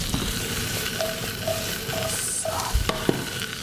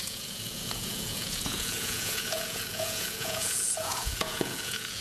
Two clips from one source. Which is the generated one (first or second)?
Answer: second